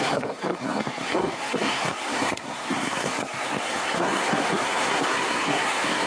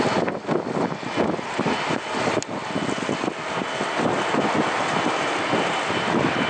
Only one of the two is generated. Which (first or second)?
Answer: first